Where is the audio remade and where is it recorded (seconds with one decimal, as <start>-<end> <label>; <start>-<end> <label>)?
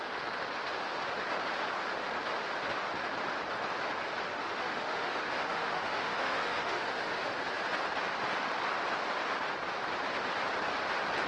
0.0-4.3 recorded; 4.3-7.3 remade; 7.3-11.3 recorded